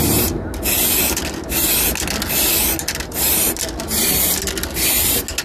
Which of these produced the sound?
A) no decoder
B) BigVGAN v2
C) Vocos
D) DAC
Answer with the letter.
A